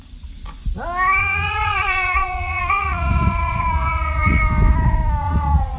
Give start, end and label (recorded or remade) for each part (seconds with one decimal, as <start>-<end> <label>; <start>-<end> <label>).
0.0-1.2 recorded; 1.2-4.4 remade; 4.4-5.2 recorded; 5.2-5.8 remade